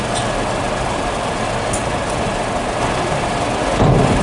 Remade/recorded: recorded